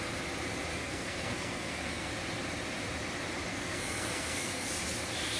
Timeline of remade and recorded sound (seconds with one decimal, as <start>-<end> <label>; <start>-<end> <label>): 0.0-0.7 recorded; 0.7-2.1 remade; 2.1-3.5 recorded; 3.5-4.7 remade; 4.7-5.4 recorded